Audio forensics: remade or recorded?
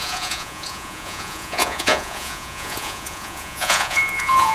remade